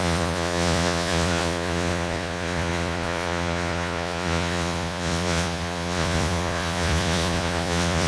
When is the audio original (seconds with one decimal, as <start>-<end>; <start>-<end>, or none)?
none